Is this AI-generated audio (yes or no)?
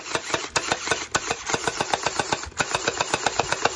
no